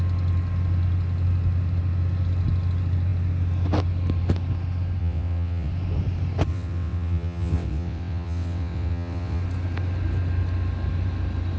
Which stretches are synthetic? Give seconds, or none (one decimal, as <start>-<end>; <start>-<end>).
5.0-5.7; 6.5-9.4